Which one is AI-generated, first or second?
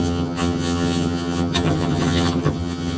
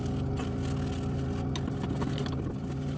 first